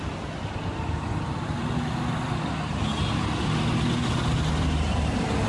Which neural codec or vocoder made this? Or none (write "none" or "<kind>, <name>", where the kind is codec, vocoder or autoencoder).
none